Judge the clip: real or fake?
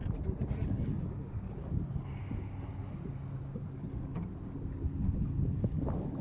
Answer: real